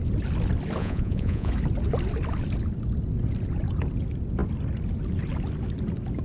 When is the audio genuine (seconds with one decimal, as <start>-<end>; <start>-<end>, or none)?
0.0-0.8; 1.5-6.2

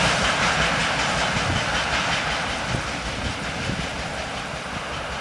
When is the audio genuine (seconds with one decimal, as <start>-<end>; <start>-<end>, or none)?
0.0-5.2

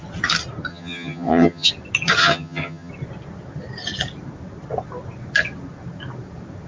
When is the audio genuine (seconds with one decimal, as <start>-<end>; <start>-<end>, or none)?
0.0-0.7; 1.7-2.2; 2.9-6.7

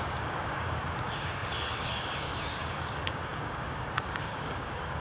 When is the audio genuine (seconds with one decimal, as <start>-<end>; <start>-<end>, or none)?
none